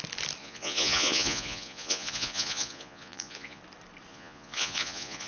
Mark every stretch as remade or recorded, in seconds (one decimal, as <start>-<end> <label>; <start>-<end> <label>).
0.0-0.4 recorded; 0.4-3.6 remade; 3.6-4.1 recorded; 4.1-5.3 remade